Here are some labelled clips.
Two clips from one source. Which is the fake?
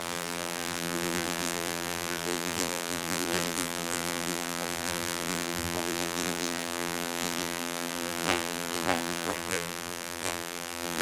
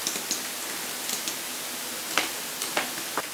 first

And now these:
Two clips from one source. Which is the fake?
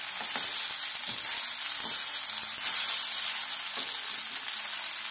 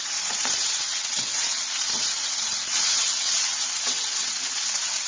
second